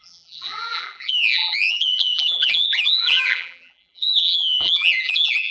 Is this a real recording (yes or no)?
no